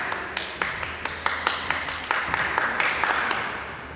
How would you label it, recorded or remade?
recorded